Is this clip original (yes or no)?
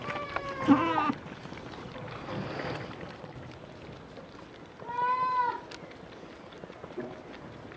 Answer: yes